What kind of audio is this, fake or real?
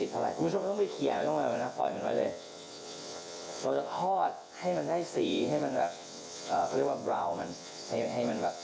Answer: fake